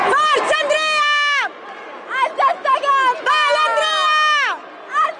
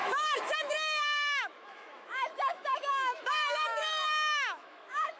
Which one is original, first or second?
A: first